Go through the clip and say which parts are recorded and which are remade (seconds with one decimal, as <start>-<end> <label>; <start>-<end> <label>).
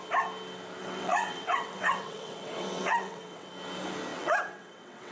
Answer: 0.0-0.8 recorded; 0.8-3.5 remade; 3.5-4.1 recorded; 4.1-5.1 remade